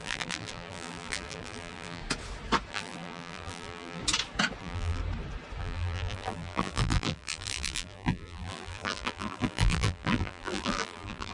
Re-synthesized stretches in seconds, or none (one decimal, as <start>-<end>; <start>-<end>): 0.0-2.0; 2.7-4.0; 4.6-5.0; 5.6-11.3